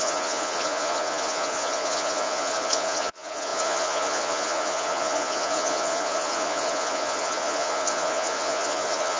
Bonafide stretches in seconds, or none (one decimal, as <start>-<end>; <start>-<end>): none